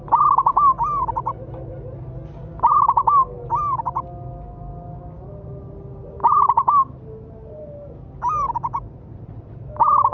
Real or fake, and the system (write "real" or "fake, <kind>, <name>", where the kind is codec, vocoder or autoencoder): real